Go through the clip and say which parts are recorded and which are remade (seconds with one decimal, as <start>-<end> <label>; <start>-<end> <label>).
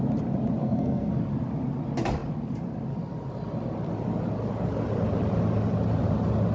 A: 0.0-0.6 recorded; 0.6-1.1 remade; 1.1-6.5 recorded